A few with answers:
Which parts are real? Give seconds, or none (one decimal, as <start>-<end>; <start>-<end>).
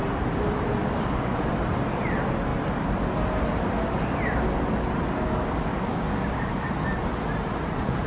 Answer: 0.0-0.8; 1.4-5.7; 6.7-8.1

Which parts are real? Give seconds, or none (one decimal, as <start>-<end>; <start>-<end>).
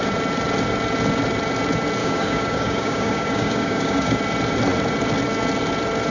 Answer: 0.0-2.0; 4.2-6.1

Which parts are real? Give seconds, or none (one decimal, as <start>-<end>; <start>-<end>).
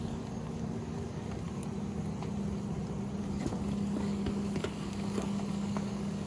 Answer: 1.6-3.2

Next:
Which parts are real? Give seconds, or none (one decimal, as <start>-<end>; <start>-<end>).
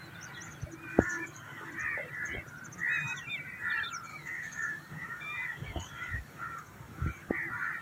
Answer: 0.0-0.9; 1.7-4.1; 7.3-7.8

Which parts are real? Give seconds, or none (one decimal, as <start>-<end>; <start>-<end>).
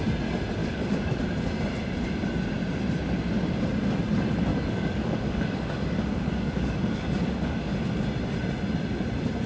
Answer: 0.0-0.6; 1.2-4.5; 7.7-9.5